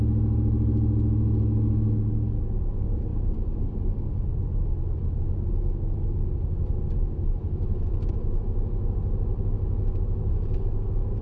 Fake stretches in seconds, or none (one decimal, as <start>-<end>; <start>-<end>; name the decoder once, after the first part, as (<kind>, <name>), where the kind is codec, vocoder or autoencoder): none

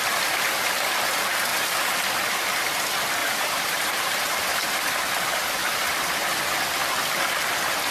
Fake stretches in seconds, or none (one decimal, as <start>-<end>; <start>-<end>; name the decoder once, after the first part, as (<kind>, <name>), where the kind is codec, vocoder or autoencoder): 3.2-4.8 (vocoder, BigVGAN v2)

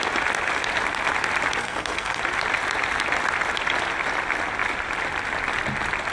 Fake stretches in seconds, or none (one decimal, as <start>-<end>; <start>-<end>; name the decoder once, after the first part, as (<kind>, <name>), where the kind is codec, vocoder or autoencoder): 1.6-2.2 (codec, SNAC)

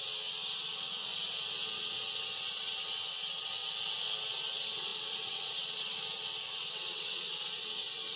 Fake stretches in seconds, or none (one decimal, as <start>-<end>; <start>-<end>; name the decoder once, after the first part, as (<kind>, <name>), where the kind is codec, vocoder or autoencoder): 0.0-1.1 (vocoder, WaveNeXt); 1.8-3.6; 4.5-8.2

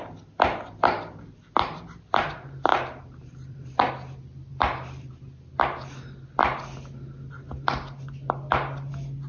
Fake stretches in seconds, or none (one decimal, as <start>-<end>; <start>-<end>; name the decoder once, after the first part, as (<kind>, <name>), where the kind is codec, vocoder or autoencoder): 2.7-3.9 (vocoder, BigVGAN v2); 4.5-5.1

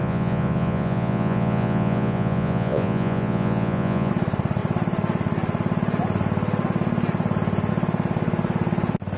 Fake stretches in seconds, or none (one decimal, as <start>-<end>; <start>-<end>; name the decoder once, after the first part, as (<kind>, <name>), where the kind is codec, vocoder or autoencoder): 0.0-4.1 (vocoder, Vocos)